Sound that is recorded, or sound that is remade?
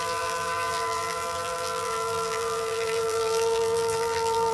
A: remade